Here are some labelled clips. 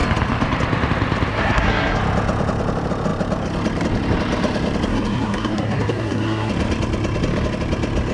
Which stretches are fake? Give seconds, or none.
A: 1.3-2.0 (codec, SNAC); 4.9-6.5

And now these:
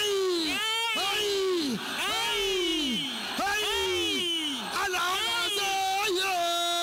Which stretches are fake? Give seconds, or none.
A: none

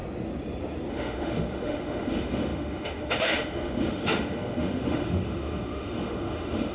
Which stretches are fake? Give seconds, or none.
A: 0.9-6.7 (autoencoder, DAC-VAE)

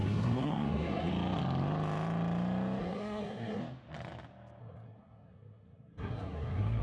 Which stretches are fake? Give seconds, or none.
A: 0.0-1.1 (codec, SNAC); 2.8-3.6; 4.6-6.8

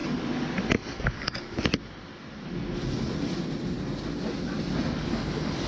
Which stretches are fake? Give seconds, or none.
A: 0.7-1.7 (codec, DAC); 5.1-5.7

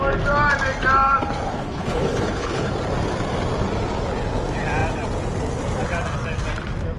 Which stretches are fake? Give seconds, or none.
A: 1.5-2.7 (codec, HILCodec)